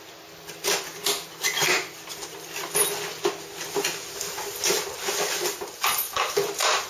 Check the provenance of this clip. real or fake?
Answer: real